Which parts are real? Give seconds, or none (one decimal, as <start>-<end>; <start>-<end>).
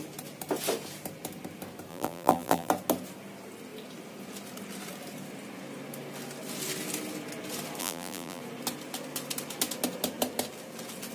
0.0-1.9; 2.7-7.8; 8.4-11.1